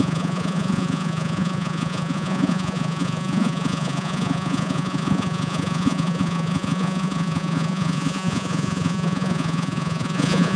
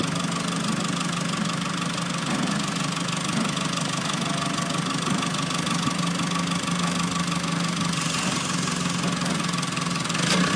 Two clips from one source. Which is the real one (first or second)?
second